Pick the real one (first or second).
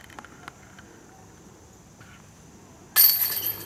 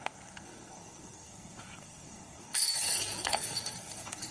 first